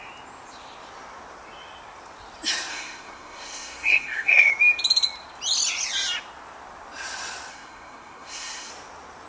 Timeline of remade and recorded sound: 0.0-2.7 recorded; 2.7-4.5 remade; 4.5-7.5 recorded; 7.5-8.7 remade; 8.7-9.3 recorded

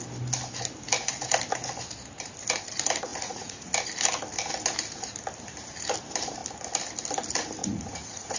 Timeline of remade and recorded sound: 0.0-3.1 recorded; 3.1-3.7 remade; 3.7-7.6 recorded; 7.6-8.4 remade

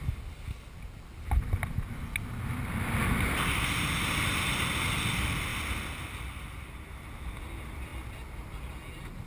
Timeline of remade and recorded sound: 0.0-9.3 recorded

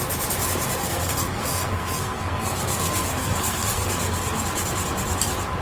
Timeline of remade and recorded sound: 0.0-0.8 recorded; 0.8-4.2 remade; 4.2-5.6 recorded

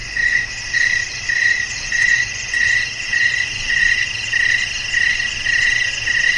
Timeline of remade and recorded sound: 0.0-0.5 remade; 0.5-1.1 recorded; 1.1-4.1 remade; 4.1-6.4 recorded